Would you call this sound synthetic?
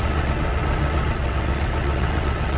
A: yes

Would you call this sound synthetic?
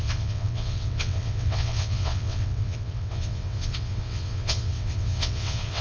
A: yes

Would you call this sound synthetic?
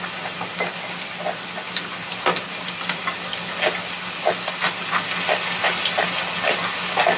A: no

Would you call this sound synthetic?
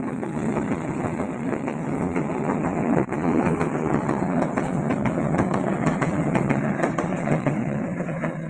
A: yes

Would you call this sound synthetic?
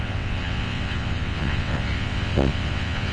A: yes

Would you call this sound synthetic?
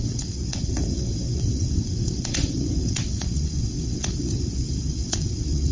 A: yes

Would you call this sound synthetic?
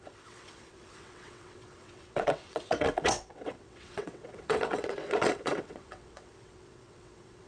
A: yes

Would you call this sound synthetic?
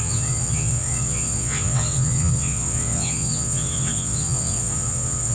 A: yes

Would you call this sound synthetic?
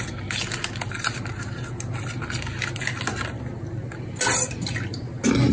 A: no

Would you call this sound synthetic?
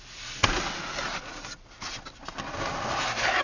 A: no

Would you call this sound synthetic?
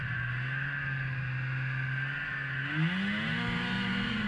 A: no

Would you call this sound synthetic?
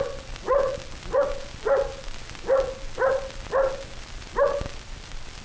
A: no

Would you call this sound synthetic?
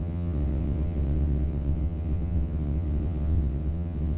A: yes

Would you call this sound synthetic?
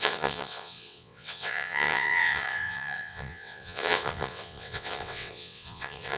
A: yes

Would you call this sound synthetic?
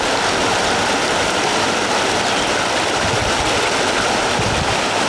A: no